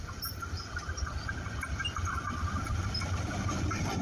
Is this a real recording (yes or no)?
yes